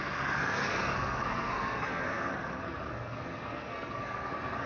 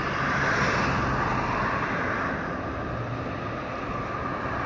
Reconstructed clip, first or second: first